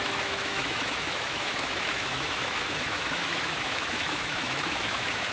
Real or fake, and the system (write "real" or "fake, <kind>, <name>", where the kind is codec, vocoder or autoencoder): fake, autoencoder, DAC-VAE